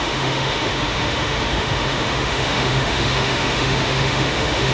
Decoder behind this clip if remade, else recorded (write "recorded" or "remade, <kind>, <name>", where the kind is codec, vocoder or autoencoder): remade, autoencoder, DAC-VAE